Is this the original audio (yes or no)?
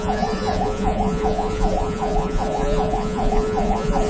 no